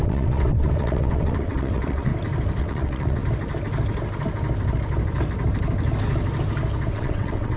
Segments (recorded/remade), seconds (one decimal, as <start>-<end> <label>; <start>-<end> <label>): 0.0-2.1 remade; 2.1-2.6 recorded; 2.6-3.2 remade; 3.2-6.9 recorded; 6.9-7.6 remade